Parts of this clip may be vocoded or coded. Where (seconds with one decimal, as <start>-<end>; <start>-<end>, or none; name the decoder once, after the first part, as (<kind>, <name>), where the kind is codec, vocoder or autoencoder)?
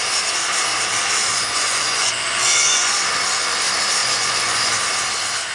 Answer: 1.3-3.0 (vocoder, Vocos); 4.0-4.7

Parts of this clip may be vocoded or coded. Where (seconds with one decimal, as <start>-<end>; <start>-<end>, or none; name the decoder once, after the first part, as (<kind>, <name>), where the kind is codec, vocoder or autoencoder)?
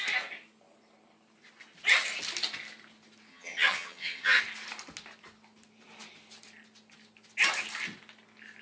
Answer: 3.3-4.4 (vocoder, HiFi-GAN)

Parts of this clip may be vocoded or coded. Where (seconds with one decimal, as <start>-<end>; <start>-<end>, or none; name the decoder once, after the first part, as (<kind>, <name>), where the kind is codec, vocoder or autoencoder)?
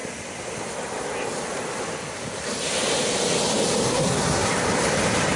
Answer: 3.9-4.5 (codec, SNAC)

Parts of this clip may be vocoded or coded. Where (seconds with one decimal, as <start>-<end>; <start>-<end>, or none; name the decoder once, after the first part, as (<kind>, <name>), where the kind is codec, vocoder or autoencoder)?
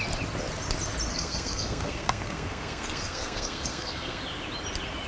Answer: 1.1-4.2 (codec, SNAC)